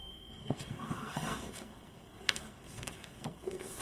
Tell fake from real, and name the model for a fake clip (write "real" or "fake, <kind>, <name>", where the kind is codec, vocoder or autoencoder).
fake, codec, SNAC